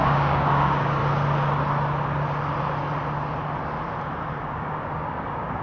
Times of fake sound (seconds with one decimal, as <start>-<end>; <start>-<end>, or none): 0.0-1.0; 4.4-5.6